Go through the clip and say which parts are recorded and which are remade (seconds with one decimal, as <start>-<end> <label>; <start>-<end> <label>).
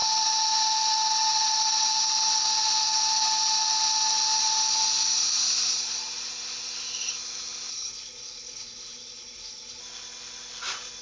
0.0-7.7 recorded; 7.7-9.8 remade; 9.8-11.0 recorded